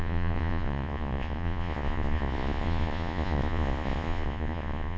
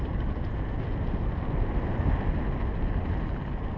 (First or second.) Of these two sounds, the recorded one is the second